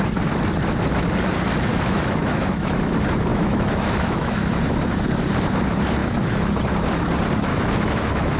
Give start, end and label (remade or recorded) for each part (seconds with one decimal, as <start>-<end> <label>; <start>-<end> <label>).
0.0-1.7 recorded; 1.7-2.9 remade; 2.9-3.3 recorded; 3.3-4.3 remade; 4.3-6.0 recorded; 6.0-6.6 remade; 6.6-7.5 recorded; 7.5-8.4 remade